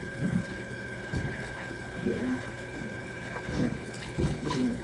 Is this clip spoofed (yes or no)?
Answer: yes